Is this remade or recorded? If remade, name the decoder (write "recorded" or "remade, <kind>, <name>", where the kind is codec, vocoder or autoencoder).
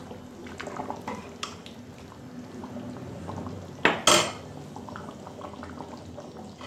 recorded